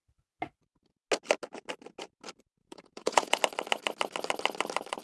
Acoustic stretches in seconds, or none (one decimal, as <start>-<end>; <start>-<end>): 0.0-2.6; 3.4-5.0